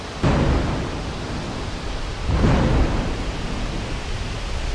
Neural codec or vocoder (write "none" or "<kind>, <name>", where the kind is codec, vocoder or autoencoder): none